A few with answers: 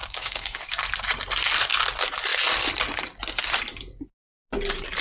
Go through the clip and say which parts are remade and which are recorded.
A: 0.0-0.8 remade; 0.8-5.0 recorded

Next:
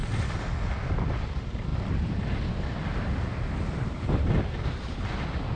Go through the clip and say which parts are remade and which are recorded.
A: 0.0-5.6 recorded

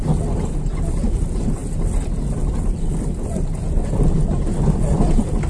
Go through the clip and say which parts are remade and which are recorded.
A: 0.0-5.5 recorded

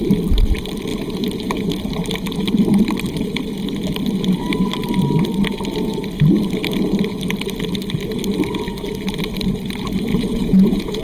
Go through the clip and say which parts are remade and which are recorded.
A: 0.0-10.1 recorded; 10.1-11.0 remade